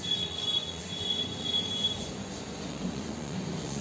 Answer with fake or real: fake